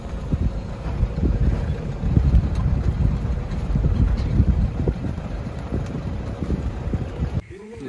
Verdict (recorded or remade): remade